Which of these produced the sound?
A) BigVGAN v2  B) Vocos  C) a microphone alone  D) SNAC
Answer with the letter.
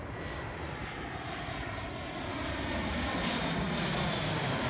C